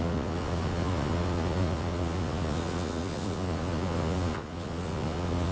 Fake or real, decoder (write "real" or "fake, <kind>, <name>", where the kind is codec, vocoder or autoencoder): fake, vocoder, Vocos